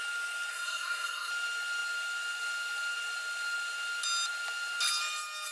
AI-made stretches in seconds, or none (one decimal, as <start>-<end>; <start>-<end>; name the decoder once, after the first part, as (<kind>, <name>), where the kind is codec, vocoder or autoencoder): 0.5-1.3 (codec, SNAC)